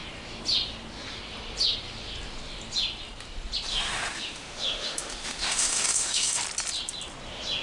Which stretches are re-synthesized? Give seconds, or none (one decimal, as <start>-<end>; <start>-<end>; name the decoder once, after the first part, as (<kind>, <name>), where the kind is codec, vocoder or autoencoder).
3.7-6.4 (autoencoder, DAC-VAE)

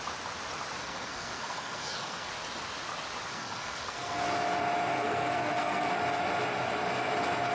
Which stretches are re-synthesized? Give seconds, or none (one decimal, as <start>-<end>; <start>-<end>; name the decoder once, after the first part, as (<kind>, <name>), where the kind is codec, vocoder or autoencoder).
0.8-2.3 (codec, SNAC); 3.3-4.2; 4.9-5.9

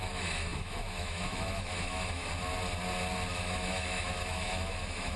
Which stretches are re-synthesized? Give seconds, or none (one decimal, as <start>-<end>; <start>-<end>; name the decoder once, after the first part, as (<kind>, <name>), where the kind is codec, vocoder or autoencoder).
0.0-2.3 (autoencoder, DAC-VAE); 3.3-5.2